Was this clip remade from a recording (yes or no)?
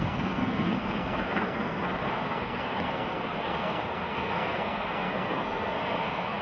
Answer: yes